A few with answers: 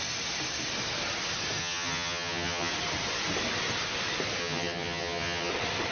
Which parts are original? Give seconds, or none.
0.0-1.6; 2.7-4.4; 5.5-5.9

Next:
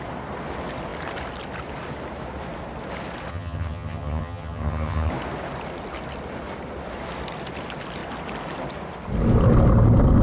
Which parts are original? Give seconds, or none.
0.0-3.3; 5.1-10.2

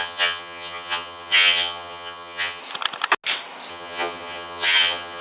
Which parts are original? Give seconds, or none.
2.6-3.7

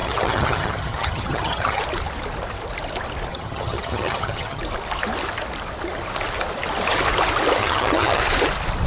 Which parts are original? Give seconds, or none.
1.8-3.3; 4.6-7.6; 8.2-8.9

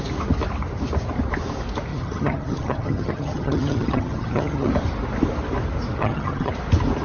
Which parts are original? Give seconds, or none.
0.0-1.9; 4.7-6.0; 6.5-7.0

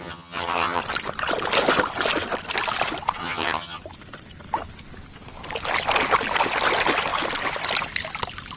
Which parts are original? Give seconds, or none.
0.8-3.2; 3.8-8.6